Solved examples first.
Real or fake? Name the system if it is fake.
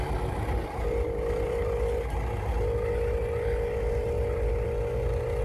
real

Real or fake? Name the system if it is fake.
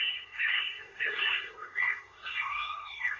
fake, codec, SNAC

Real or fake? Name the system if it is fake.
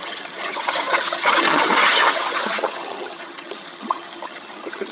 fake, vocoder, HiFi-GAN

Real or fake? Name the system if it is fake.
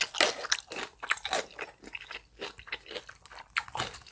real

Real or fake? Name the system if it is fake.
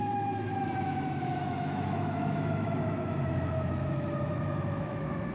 fake, autoencoder, DAC-VAE